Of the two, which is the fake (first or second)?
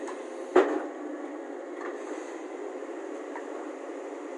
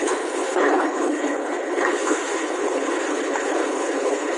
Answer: second